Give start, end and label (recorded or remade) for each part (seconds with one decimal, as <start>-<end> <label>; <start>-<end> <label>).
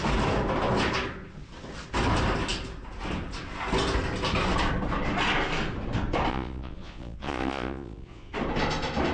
0.0-6.3 recorded; 6.3-8.3 remade; 8.3-9.1 recorded